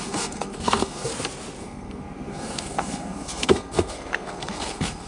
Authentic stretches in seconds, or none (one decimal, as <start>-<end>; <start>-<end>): 1.1-1.6